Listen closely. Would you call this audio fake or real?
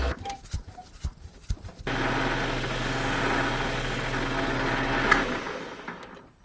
real